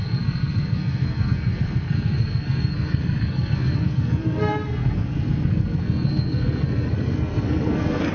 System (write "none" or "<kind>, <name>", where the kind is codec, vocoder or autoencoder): codec, SNAC